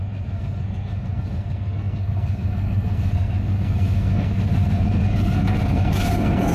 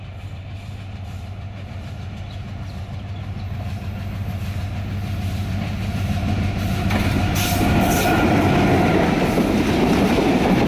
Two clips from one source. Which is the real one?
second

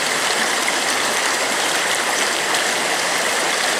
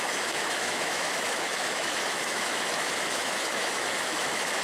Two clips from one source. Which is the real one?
first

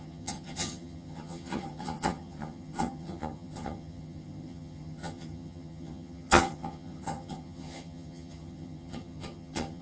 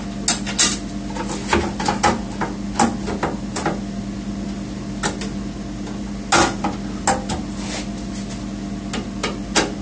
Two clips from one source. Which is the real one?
second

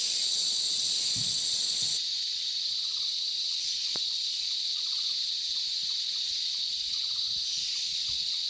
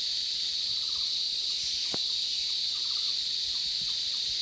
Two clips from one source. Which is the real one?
second